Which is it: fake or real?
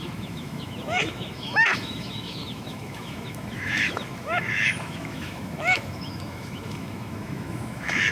fake